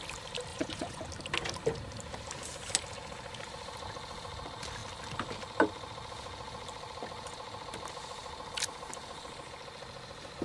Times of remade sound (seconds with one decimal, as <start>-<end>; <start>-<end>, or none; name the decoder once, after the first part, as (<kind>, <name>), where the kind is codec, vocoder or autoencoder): 0.5-1.0 (vocoder, Vocos)